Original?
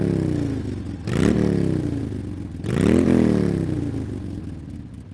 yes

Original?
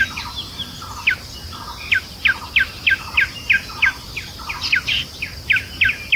yes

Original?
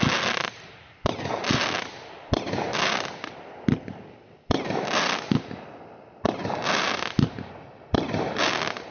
yes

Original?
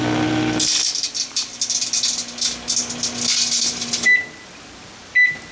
yes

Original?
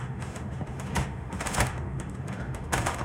no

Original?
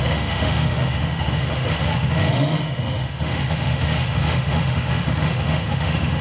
no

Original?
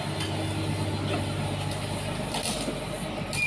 yes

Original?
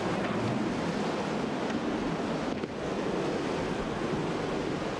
yes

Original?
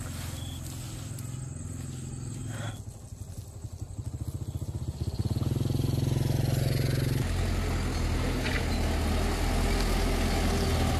yes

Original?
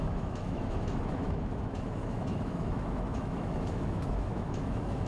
no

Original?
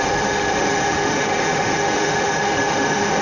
no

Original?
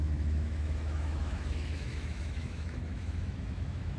no